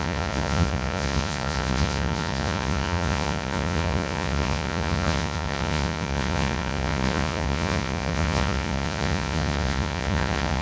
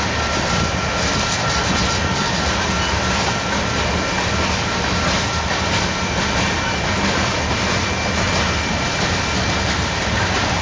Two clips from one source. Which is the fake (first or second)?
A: first